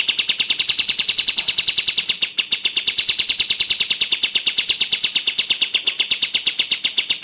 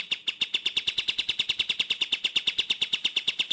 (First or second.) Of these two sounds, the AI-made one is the second